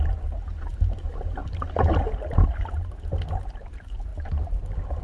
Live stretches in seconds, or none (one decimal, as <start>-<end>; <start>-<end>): 0.0-5.0